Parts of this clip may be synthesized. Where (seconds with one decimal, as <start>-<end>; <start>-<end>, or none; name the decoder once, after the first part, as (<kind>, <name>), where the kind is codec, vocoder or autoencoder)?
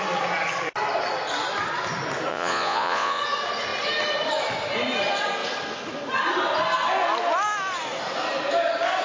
2.3-3.2 (vocoder, Vocos)